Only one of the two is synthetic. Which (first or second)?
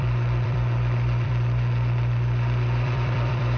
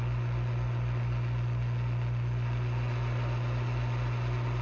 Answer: first